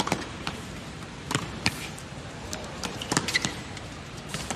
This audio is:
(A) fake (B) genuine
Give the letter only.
A